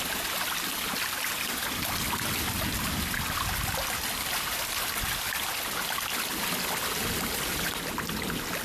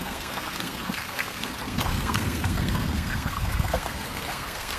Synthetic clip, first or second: second